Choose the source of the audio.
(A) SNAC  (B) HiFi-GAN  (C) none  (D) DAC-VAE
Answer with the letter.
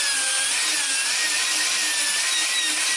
C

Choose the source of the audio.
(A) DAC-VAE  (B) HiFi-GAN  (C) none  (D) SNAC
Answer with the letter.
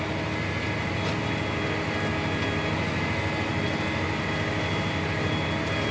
C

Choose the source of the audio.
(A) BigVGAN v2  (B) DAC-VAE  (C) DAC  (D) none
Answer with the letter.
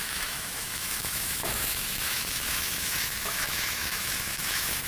B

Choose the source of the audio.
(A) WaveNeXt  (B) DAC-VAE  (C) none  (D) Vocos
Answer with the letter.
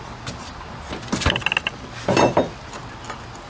C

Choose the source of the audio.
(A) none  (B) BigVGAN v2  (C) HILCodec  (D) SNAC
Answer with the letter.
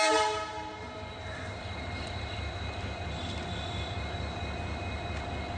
A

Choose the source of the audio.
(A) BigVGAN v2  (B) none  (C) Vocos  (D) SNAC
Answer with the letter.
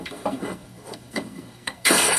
D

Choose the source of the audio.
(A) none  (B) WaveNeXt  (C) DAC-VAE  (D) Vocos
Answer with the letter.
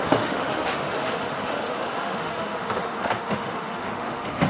C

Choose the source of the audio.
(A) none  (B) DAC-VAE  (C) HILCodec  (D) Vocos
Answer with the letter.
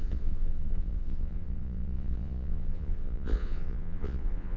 D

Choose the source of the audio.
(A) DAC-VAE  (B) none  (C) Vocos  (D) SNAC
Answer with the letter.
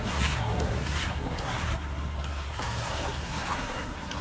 D